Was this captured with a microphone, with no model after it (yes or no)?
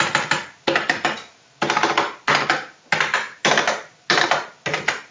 yes